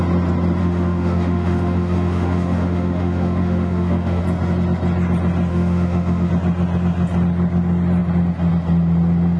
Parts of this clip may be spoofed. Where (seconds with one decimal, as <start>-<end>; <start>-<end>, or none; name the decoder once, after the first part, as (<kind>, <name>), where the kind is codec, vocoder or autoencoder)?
0.6-4.2 (autoencoder, DAC-VAE); 5.5-6.3